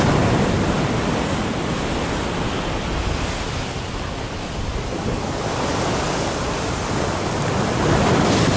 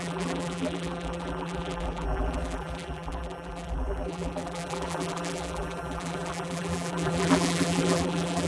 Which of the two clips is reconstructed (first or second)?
second